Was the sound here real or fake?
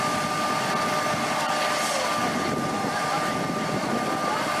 real